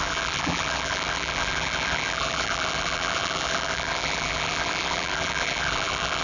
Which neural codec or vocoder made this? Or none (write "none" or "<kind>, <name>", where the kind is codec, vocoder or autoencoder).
vocoder, BigVGAN v2